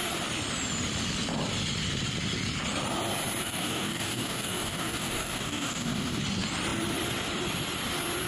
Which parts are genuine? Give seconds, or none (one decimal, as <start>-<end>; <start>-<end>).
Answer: 0.0-3.4; 6.2-8.3